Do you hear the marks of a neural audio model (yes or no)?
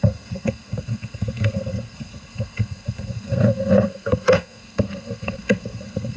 yes